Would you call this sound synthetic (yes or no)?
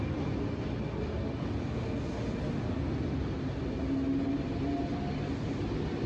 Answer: no